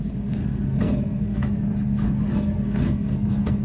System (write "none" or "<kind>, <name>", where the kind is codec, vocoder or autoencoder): codec, SNAC